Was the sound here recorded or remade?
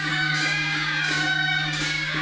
remade